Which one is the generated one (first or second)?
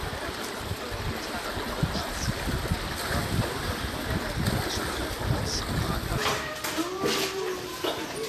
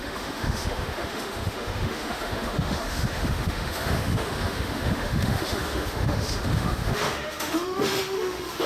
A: second